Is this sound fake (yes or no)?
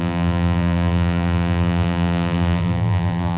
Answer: yes